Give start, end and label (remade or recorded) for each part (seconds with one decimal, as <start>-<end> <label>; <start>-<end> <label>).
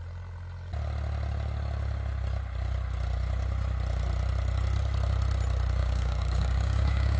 0.0-5.8 recorded; 5.8-7.2 remade